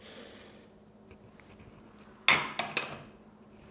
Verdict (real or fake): real